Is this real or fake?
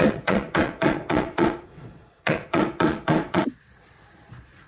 fake